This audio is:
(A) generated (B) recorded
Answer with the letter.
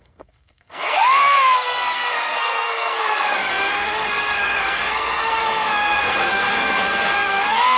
A